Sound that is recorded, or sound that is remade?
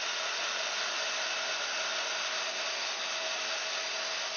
recorded